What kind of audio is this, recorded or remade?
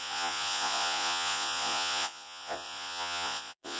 remade